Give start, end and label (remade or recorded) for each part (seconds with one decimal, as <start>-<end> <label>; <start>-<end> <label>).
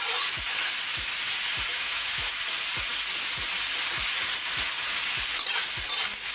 0.0-1.7 recorded; 1.7-2.3 remade; 2.3-6.3 recorded